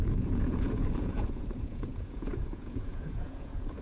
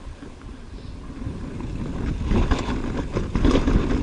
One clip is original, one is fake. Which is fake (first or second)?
first